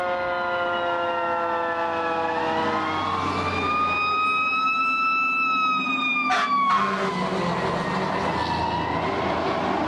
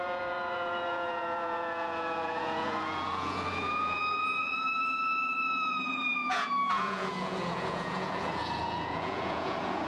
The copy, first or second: second